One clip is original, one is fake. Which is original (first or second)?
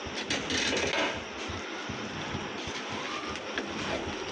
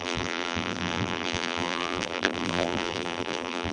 first